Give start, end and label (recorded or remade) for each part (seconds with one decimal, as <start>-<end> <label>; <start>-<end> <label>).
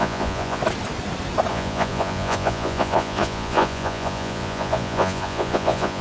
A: 0.0-0.6 remade; 0.6-1.5 recorded; 1.5-6.0 remade